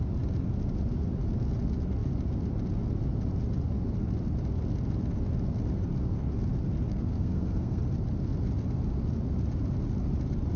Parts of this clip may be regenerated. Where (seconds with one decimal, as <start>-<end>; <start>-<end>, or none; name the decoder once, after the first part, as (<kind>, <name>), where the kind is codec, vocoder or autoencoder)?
6.9-7.8 (codec, SNAC)